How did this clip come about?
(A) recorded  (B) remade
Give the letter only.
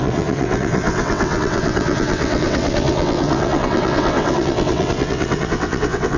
B